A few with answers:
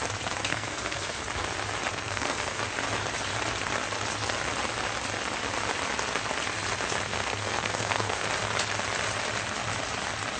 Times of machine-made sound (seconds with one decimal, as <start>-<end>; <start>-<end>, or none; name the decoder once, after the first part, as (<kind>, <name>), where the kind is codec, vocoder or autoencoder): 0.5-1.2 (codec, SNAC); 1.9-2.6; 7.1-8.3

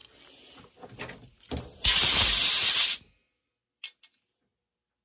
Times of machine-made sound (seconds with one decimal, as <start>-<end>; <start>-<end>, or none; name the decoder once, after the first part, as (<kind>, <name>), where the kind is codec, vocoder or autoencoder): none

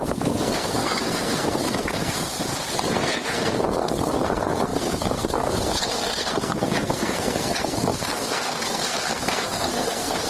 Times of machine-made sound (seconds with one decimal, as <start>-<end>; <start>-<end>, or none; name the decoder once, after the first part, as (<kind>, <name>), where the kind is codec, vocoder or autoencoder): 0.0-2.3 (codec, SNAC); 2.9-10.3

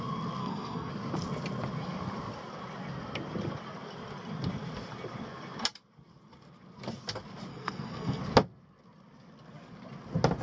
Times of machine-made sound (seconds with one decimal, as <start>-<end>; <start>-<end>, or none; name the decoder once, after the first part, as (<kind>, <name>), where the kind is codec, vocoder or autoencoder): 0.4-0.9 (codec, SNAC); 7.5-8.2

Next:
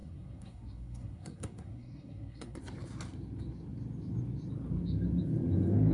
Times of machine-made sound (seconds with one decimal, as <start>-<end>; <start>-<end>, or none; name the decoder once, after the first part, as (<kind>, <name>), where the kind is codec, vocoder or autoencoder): 0.0-2.6 (codec, SNAC)

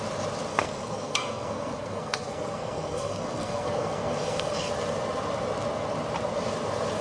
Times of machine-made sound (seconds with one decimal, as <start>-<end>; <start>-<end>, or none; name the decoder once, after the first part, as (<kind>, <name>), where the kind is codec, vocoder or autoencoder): 0.5-4.7 (codec, SNAC)

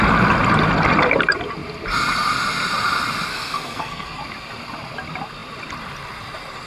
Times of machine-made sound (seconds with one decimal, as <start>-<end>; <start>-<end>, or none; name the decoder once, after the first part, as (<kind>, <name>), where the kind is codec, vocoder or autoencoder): 3.3-4.2 (codec, SNAC)